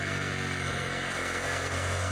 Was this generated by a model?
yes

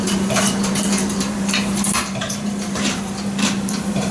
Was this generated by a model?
yes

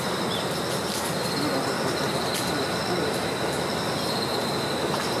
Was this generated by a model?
no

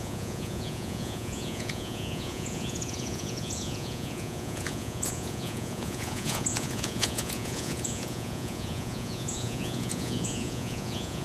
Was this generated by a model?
yes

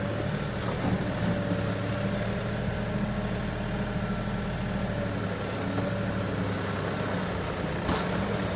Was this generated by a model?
no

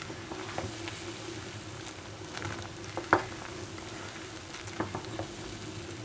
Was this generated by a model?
no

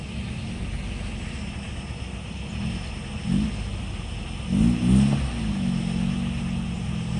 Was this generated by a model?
no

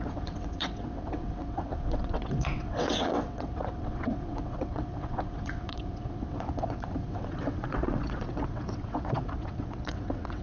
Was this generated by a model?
yes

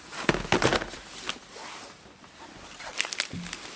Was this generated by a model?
no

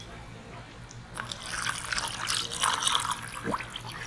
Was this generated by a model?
no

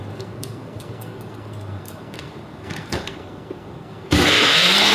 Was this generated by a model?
yes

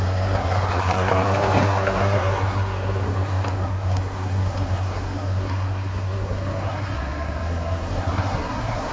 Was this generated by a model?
yes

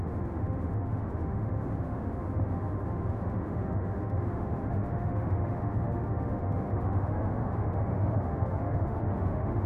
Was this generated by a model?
yes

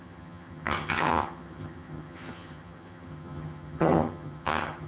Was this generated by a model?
yes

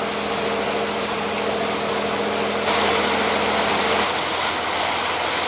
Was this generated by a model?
no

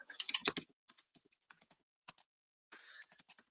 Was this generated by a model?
yes